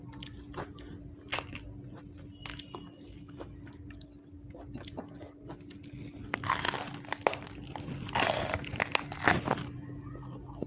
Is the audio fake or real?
real